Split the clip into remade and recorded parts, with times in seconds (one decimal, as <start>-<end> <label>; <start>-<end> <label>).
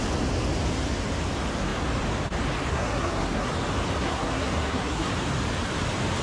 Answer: 0.0-2.7 recorded; 2.7-3.5 remade; 3.5-4.0 recorded; 4.0-5.1 remade; 5.1-6.2 recorded